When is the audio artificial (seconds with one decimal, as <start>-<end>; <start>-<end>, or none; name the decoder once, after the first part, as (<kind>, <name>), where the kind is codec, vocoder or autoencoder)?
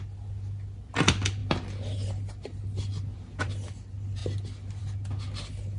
none